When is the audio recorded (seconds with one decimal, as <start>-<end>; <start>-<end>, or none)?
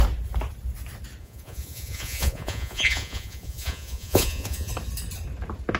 0.0-1.2; 4.7-5.8